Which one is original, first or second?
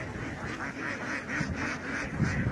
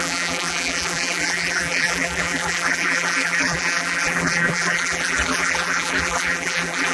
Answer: first